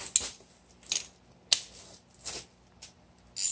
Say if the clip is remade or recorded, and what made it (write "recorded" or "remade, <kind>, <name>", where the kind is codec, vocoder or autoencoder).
recorded